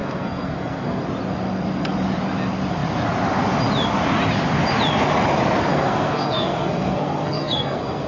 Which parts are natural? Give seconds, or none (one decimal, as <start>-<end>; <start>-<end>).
1.0-5.7